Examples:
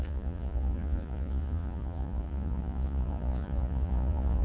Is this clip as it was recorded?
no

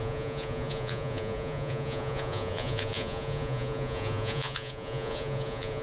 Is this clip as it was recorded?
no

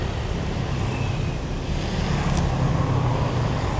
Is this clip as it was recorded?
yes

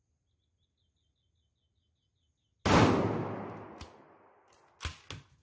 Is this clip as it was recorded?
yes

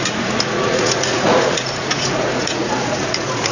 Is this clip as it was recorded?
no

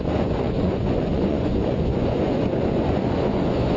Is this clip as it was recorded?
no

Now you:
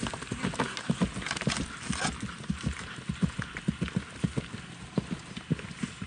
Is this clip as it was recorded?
yes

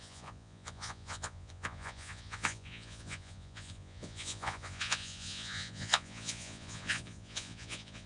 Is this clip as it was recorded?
no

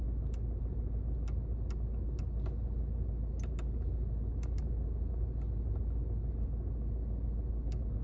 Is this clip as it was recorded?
yes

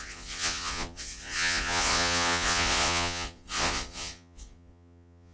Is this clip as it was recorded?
no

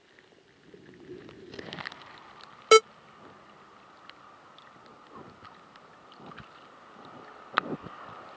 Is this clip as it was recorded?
yes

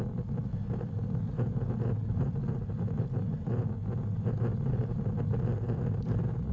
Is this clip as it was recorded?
yes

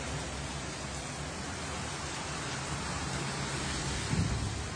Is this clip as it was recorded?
yes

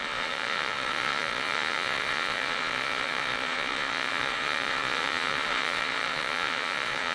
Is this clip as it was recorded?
no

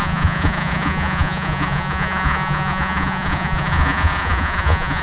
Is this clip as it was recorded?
no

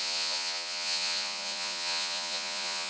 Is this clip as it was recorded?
no